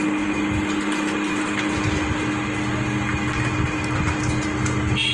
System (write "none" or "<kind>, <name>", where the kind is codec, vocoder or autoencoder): none